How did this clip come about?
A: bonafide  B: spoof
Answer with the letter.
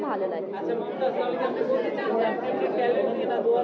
A